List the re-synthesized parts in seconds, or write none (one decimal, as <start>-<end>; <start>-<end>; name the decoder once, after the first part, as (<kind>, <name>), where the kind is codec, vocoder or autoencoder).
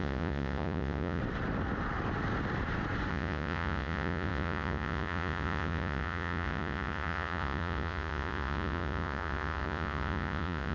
0.0-1.2 (vocoder, Vocos); 3.1-10.7